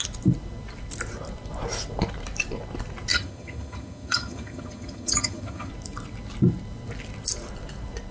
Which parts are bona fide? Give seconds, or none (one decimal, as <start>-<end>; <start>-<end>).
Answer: 0.0-3.1; 5.7-8.1